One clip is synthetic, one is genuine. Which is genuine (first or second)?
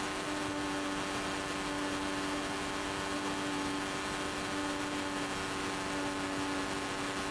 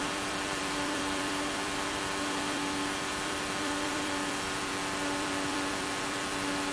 first